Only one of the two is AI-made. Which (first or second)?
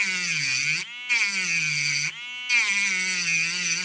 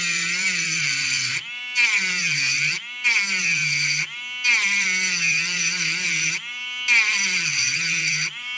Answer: second